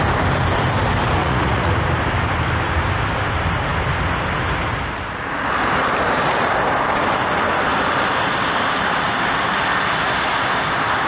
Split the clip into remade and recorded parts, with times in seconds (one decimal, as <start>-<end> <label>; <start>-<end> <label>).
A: 0.0-1.2 recorded; 1.2-1.7 remade; 1.7-11.1 recorded